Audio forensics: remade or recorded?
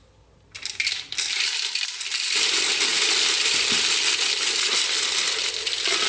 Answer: recorded